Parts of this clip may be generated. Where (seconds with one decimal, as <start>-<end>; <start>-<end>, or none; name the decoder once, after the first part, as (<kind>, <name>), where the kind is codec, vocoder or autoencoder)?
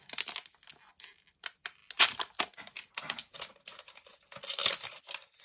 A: none